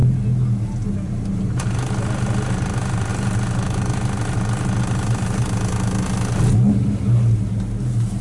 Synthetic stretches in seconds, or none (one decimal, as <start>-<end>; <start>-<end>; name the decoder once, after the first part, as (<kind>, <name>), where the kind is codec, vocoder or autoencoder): none